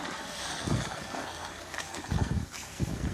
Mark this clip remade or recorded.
remade